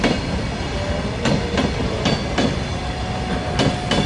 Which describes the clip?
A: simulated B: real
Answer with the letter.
B